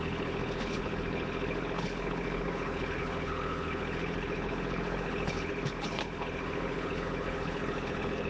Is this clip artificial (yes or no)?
yes